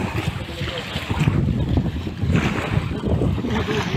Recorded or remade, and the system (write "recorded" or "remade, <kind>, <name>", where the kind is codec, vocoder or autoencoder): recorded